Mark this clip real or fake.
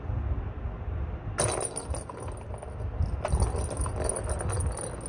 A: real